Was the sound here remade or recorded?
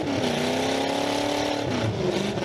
recorded